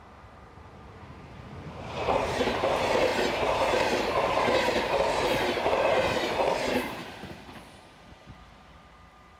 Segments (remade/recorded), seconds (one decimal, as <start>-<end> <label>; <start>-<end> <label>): 0.0-7.0 remade; 7.0-7.7 recorded; 7.7-9.4 remade